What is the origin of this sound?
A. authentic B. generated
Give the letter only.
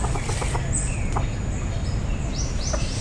A